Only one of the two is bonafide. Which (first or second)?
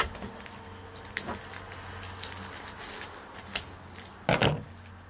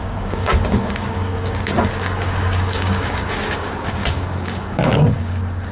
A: first